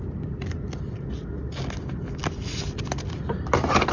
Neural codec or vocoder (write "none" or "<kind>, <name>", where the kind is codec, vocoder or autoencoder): none